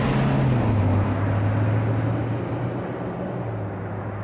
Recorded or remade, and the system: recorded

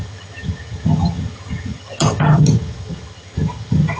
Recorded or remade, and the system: remade, vocoder, HiFi-GAN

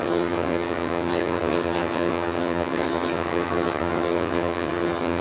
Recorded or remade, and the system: remade, vocoder, HiFi-GAN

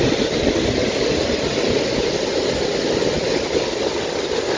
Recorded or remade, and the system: recorded